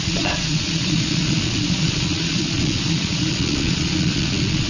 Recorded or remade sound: remade